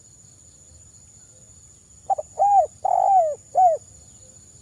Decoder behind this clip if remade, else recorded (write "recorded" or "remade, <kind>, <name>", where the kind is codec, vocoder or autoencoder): recorded